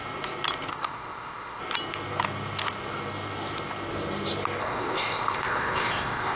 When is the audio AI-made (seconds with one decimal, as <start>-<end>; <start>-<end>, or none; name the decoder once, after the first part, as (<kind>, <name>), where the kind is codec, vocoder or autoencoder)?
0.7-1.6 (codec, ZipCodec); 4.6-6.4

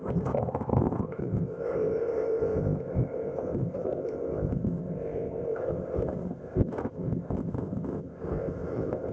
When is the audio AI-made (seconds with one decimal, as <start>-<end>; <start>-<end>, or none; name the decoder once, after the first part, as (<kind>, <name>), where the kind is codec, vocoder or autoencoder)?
0.0-9.1 (codec, ZipCodec)

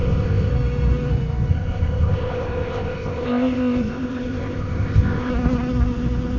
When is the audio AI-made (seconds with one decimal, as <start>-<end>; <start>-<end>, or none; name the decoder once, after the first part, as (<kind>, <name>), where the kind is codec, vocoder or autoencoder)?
0.0-0.5 (codec, ZipCodec); 1.5-5.3